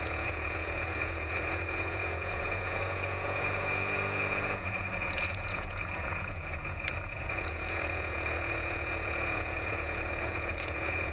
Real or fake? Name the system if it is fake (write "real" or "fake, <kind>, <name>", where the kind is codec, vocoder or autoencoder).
fake, vocoder, Vocos